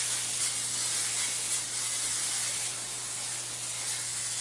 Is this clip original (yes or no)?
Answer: yes